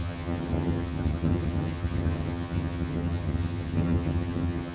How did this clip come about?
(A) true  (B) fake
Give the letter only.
B